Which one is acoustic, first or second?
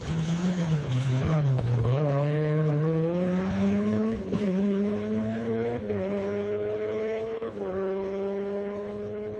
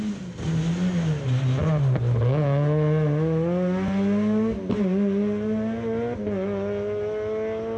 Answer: second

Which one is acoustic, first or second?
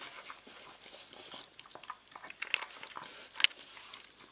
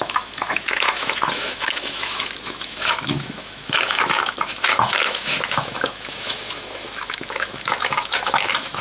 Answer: first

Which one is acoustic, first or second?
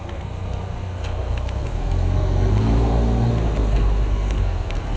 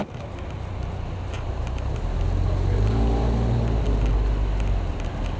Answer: second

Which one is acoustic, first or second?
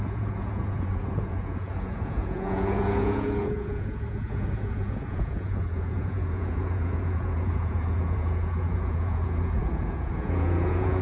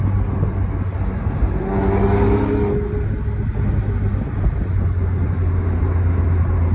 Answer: second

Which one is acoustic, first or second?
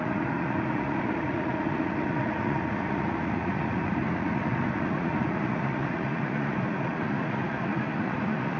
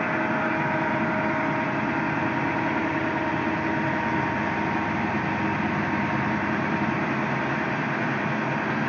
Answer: second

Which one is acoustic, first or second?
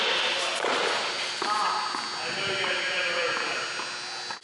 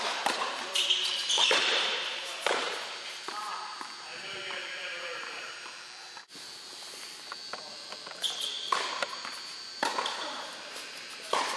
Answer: first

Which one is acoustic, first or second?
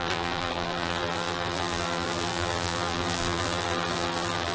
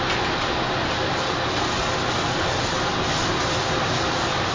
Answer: second